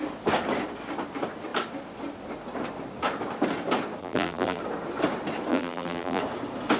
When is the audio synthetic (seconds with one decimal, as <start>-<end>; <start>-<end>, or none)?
4.0-4.6; 5.5-6.2